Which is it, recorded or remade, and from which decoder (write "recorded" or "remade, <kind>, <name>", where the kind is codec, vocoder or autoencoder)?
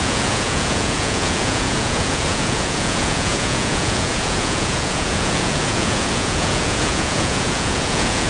remade, vocoder, Vocos